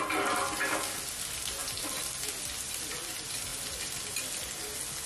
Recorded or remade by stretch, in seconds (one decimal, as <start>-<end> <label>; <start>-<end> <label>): 0.0-5.1 recorded